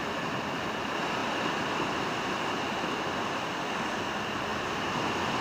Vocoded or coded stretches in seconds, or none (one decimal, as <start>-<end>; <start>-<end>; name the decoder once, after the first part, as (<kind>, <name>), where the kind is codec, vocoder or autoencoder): 4.5-5.4 (vocoder, BigVGAN v2)

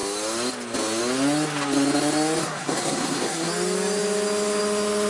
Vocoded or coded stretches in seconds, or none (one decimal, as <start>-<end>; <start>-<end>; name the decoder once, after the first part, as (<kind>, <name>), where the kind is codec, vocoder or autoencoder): 2.4-3.5 (codec, SNAC)

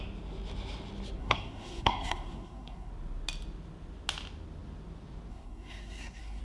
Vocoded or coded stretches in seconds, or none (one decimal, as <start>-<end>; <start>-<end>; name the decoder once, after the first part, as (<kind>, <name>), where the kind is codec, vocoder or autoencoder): 1.2-2.9 (codec, SNAC); 5.3-6.4

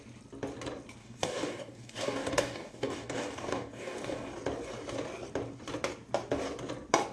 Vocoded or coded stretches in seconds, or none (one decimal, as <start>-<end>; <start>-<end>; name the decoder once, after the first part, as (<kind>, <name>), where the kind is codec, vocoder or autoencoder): 1.0-4.3 (codec, DAC)

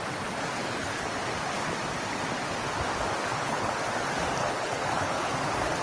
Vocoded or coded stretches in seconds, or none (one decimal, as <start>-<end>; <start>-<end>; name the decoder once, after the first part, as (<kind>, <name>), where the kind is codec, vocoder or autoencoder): 0.6-1.1 (codec, HILCodec); 3.3-3.8; 4.4-5.3